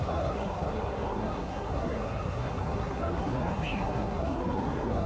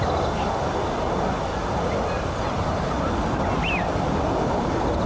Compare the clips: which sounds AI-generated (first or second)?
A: first